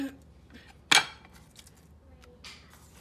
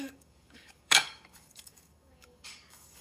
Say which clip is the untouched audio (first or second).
first